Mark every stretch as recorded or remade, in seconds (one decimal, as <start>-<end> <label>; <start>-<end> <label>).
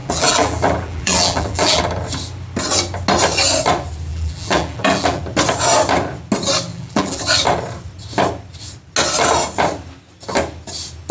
0.0-1.8 remade; 1.8-4.1 recorded; 4.1-5.2 remade; 5.2-6.7 recorded; 6.7-7.2 remade; 7.2-11.1 recorded